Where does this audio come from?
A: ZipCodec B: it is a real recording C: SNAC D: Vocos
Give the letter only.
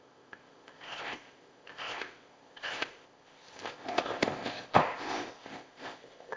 A